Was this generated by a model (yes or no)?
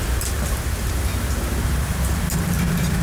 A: no